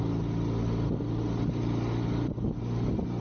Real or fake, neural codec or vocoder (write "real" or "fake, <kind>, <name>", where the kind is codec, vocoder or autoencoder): real